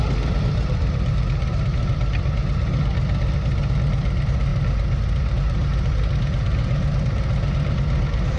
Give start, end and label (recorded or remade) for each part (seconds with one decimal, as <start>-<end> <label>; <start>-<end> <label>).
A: 0.0-8.4 recorded